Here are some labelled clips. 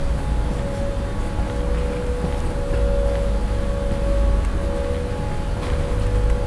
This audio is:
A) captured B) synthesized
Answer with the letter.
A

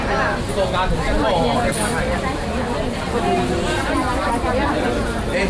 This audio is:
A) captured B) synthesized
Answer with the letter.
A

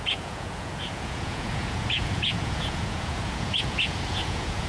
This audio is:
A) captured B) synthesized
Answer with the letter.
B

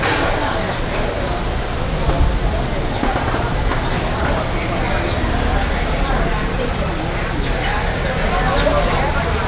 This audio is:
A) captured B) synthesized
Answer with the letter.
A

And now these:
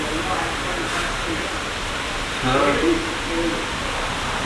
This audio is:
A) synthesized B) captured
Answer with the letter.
B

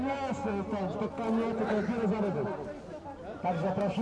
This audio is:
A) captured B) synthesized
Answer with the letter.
A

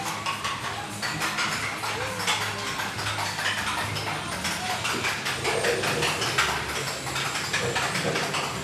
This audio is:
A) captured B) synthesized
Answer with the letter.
A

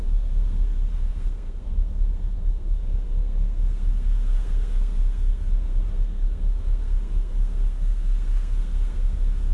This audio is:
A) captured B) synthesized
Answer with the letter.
B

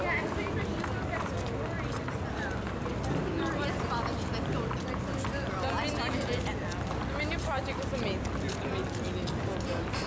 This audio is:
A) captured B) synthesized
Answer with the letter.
A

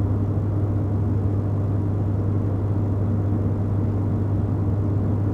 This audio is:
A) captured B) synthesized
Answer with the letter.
A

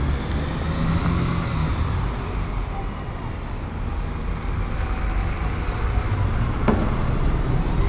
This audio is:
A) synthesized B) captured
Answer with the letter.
B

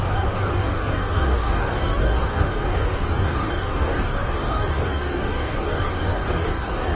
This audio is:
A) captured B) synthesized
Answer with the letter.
B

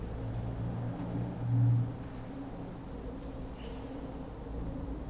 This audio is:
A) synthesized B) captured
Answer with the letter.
B